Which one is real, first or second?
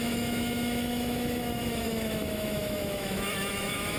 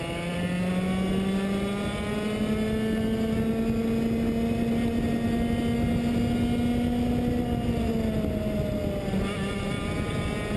second